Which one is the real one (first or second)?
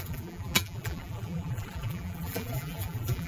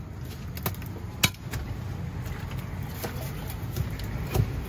second